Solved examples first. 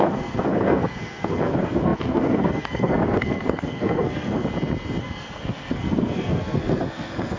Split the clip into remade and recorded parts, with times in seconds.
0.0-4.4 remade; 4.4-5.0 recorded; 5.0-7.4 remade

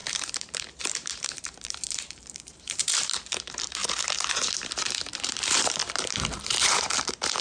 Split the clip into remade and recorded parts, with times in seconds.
0.0-3.8 remade; 3.8-5.1 recorded; 5.1-7.4 remade

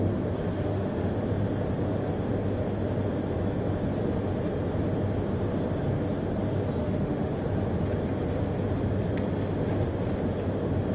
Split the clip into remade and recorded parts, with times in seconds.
0.0-0.5 recorded; 0.5-1.1 remade; 1.1-6.8 recorded; 6.8-7.3 remade; 7.3-10.9 recorded

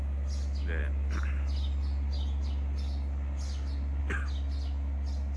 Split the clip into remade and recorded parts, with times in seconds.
0.0-5.4 recorded

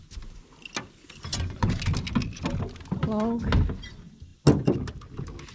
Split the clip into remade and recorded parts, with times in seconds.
0.0-1.3 recorded; 1.3-1.8 remade; 1.8-5.5 recorded